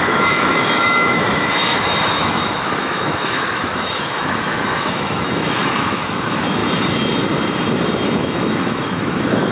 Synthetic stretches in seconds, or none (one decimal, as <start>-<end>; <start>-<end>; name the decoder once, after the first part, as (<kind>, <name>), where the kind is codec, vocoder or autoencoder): 0.0-6.6 (autoencoder, DAC-VAE); 8.2-9.5